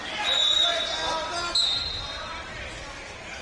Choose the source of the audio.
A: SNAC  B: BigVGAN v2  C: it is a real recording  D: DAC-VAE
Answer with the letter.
C